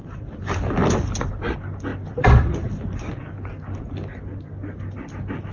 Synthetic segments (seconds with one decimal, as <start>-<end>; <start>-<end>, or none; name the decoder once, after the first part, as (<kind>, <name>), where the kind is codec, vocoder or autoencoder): 0.0-1.3 (vocoder, BigVGAN v2); 1.9-3.1